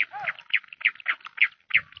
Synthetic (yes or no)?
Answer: no